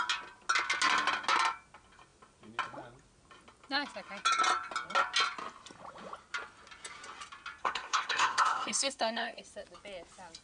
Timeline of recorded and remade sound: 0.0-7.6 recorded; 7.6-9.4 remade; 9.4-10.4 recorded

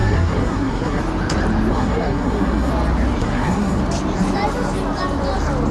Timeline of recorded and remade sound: 0.0-1.0 remade; 1.0-1.7 recorded; 1.7-2.7 remade; 2.7-3.2 recorded; 3.2-3.8 remade; 3.8-5.7 recorded

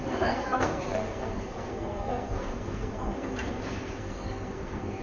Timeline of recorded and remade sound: 0.0-5.0 remade

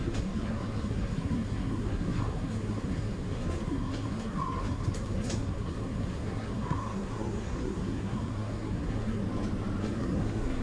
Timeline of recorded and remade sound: 0.0-9.2 remade; 9.2-9.8 recorded; 9.8-10.6 remade